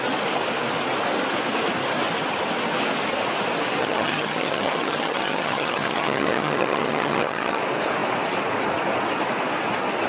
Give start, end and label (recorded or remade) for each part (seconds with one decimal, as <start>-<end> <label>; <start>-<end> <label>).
0.0-3.8 recorded; 3.8-7.6 remade; 7.6-10.1 recorded